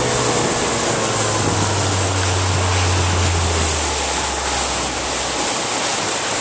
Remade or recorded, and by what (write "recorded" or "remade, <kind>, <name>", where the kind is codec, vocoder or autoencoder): recorded